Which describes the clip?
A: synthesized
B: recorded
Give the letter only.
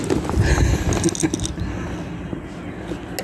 B